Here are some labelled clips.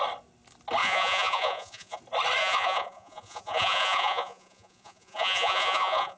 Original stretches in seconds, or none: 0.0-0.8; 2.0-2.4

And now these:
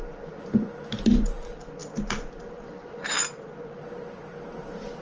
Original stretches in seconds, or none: 0.0-5.0

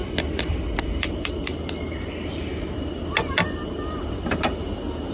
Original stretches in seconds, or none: 0.0-5.1

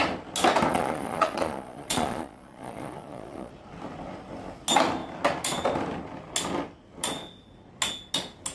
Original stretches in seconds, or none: 0.0-0.7; 3.5-8.5

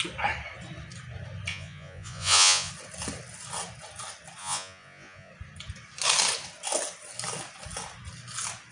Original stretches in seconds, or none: 0.0-1.5; 2.7-4.4; 5.3-8.7